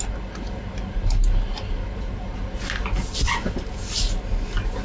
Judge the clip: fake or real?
real